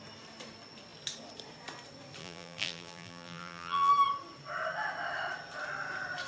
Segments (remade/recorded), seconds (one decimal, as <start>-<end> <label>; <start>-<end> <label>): 0.0-2.2 recorded; 2.2-3.9 remade; 3.9-6.3 recorded